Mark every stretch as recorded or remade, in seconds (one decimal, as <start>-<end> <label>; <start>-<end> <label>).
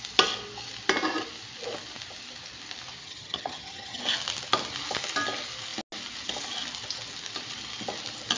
0.0-3.0 recorded; 3.0-4.0 remade; 4.0-8.4 recorded